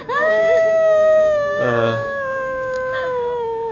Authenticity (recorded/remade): remade